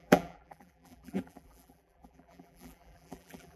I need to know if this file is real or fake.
fake